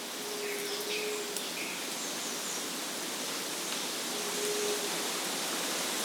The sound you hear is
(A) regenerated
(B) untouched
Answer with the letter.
B